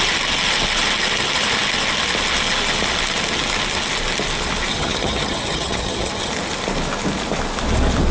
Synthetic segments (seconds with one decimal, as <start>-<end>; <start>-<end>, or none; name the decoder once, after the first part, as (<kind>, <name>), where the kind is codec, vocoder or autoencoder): 4.7-6.3 (vocoder, HiFi-GAN)